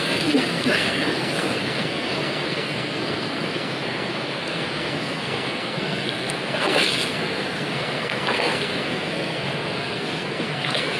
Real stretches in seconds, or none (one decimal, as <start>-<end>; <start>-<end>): none